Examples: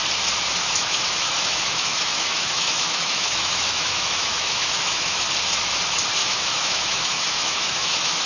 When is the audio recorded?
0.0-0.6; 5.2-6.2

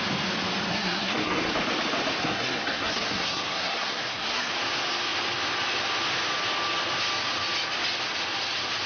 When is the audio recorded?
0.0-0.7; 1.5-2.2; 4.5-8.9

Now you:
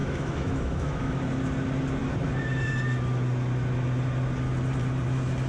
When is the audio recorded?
1.1-5.5

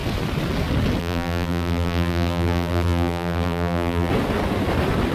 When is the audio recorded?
0.0-1.0; 4.1-5.1

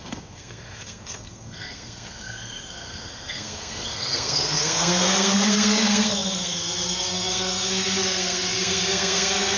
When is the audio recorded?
none

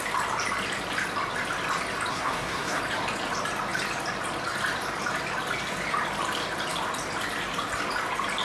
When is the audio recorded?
0.0-2.1; 2.8-8.4

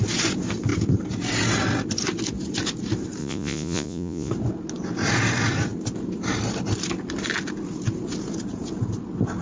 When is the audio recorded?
0.0-3.2; 4.3-9.4

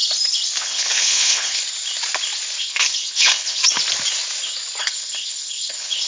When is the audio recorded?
0.0-0.6; 1.6-2.6; 3.6-4.8